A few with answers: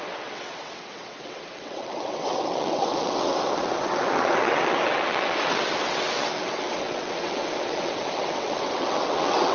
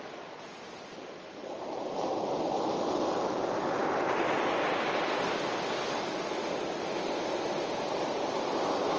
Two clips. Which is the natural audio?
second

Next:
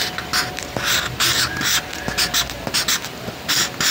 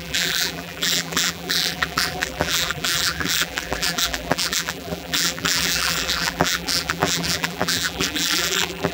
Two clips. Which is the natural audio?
first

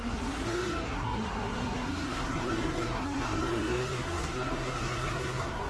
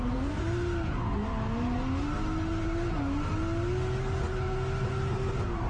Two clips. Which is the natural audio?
second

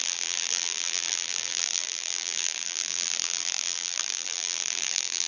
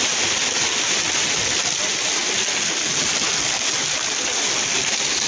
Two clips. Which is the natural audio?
second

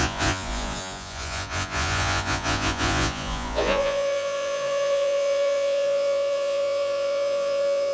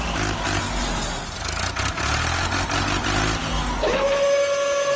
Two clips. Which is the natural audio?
second